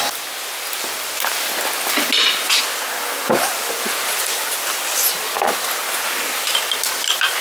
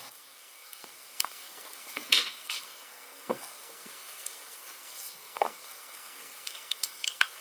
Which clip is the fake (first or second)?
second